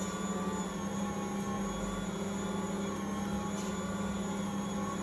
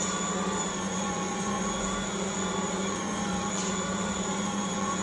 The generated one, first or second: second